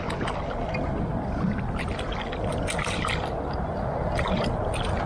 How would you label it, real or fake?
real